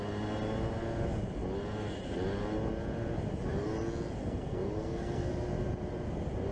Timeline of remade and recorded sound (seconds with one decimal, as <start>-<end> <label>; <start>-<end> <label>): 0.0-4.2 recorded; 4.2-5.3 remade; 5.3-6.5 recorded